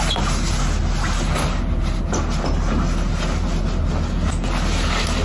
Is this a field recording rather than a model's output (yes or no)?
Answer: yes